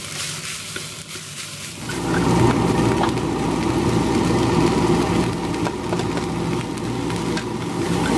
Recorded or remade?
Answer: recorded